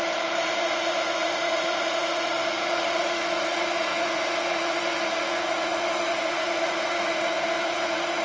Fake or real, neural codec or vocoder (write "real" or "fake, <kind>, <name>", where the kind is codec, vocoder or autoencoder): fake, vocoder, Vocos